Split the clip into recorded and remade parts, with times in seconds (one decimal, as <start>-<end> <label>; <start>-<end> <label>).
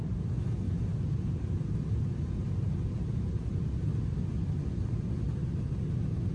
0.0-0.9 recorded; 0.9-3.9 remade; 3.9-6.3 recorded